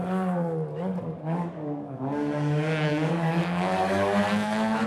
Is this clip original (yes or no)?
no